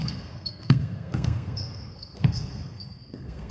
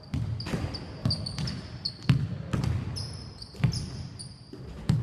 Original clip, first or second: second